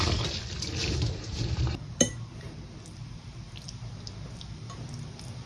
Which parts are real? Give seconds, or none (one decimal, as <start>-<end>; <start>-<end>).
0.0-0.8; 2.1-5.5